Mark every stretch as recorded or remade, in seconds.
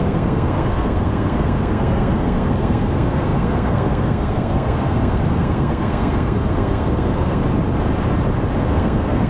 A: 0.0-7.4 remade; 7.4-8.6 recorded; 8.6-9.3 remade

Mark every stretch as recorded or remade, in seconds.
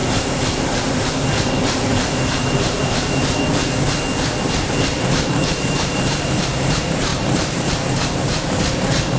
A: 0.0-3.6 remade; 3.6-4.5 recorded; 4.5-9.2 remade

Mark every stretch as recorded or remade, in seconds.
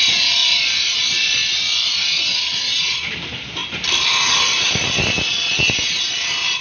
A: 0.0-0.4 recorded; 0.4-1.0 remade; 1.0-3.6 recorded; 3.6-5.5 remade; 5.5-6.6 recorded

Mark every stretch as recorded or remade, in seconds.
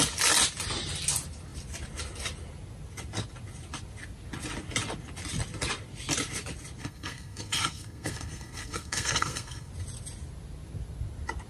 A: 0.0-6.8 recorded; 6.8-9.7 remade; 9.7-11.5 recorded